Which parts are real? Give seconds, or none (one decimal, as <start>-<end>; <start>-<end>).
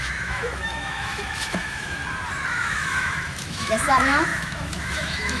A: 2.0-2.5